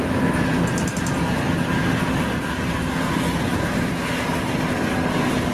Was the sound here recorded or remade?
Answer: recorded